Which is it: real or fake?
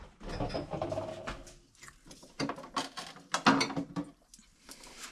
real